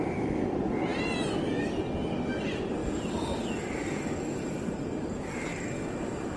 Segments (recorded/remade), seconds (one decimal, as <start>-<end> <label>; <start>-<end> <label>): 0.0-6.4 recorded